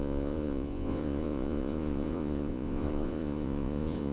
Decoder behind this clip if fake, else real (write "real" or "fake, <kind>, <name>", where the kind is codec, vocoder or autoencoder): fake, vocoder, Vocos